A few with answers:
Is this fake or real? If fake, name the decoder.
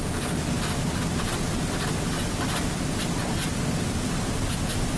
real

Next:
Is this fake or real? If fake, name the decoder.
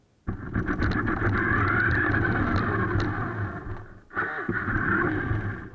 real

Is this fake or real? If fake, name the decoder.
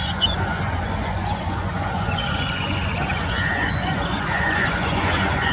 fake, vocoder, Vocos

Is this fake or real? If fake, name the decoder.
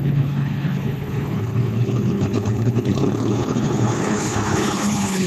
fake, codec, HILCodec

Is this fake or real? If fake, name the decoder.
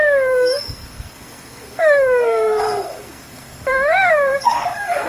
fake, codec, SNAC